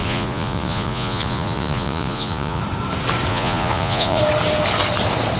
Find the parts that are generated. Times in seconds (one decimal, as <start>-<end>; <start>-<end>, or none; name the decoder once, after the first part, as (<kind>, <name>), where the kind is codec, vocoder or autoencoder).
0.0-2.6 (vocoder, Vocos); 3.3-4.2